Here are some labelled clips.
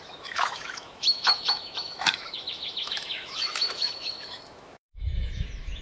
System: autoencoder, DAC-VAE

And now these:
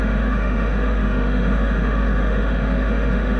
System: autoencoder, DAC-VAE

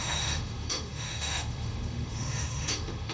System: autoencoder, DAC-VAE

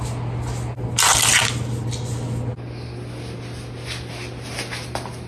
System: none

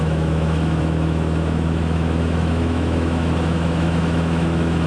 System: autoencoder, DAC-VAE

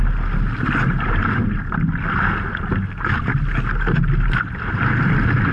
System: none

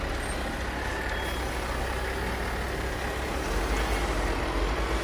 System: none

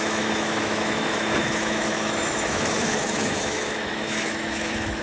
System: autoencoder, DAC-VAE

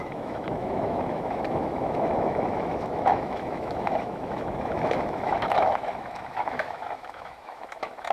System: autoencoder, DAC-VAE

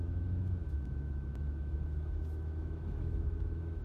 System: autoencoder, DAC-VAE